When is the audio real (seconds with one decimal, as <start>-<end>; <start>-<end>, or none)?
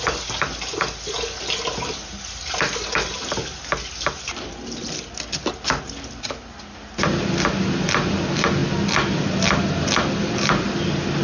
0.0-11.2